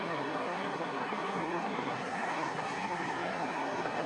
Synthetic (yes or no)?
yes